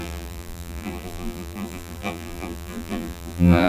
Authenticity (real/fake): fake